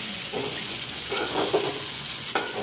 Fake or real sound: fake